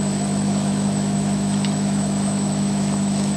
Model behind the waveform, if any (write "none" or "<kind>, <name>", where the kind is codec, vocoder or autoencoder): autoencoder, DAC-VAE